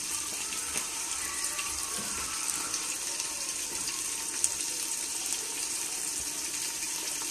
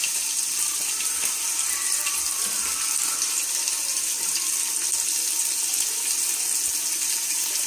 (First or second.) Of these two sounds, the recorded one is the second